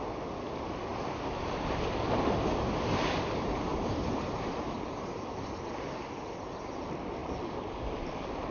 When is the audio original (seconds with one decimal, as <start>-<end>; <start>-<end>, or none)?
0.0-0.9; 2.1-3.7; 4.6-7.2; 7.9-8.5